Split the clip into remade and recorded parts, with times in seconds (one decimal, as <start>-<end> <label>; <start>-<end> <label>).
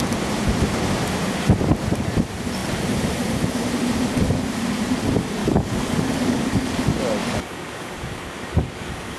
0.0-5.4 recorded; 5.4-6.8 remade; 6.8-7.2 recorded; 7.2-9.2 remade